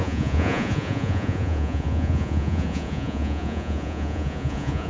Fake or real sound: fake